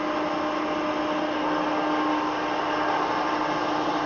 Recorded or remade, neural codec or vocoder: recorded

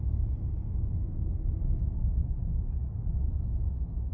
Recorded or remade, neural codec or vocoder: recorded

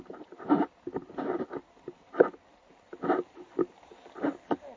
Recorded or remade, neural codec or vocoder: recorded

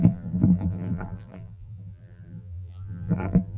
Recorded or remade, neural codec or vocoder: remade, vocoder, BigVGAN v2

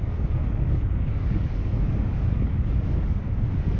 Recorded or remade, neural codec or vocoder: remade, codec, DAC